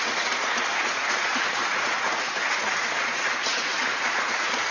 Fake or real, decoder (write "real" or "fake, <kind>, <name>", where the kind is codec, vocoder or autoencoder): fake, vocoder, Vocos